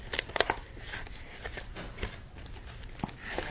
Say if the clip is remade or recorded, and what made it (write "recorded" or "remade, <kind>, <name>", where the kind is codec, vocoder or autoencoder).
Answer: recorded